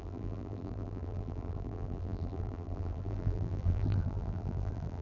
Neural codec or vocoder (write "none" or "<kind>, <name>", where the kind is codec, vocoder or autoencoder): vocoder, BigVGAN v2